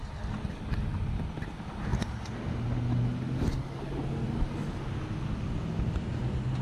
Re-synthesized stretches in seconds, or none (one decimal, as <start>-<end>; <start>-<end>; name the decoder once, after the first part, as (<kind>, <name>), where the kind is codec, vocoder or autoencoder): none